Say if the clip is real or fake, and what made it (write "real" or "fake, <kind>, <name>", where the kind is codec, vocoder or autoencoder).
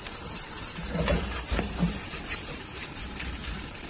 fake, vocoder, BigVGAN v2